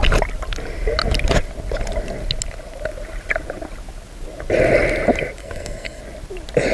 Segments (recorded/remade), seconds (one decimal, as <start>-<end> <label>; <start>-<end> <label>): 0.0-5.4 recorded; 5.4-6.0 remade; 6.0-6.7 recorded